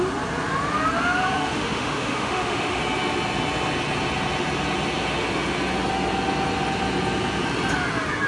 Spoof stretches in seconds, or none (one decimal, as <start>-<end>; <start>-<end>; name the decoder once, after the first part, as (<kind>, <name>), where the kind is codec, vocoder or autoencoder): 1.4-2.8 (autoencoder, DAC-VAE)